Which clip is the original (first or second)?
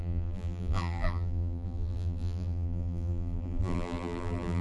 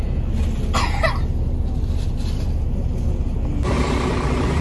second